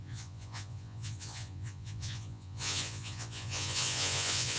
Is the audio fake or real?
fake